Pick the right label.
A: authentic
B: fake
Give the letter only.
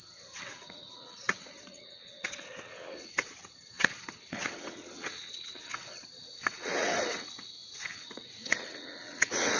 B